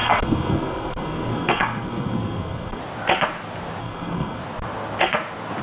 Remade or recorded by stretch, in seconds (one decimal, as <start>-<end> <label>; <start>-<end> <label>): 0.0-2.8 remade; 2.8-3.8 recorded; 3.8-4.4 remade; 4.4-5.6 recorded